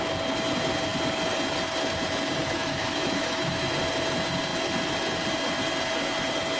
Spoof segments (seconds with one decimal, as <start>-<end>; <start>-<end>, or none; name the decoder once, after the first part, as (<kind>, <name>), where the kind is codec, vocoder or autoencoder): 2.4-3.6 (autoencoder, DAC-VAE)